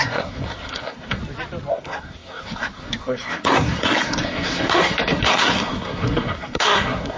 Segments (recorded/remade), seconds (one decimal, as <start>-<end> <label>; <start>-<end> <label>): 0.0-1.2 remade; 1.2-1.7 recorded; 1.7-7.2 remade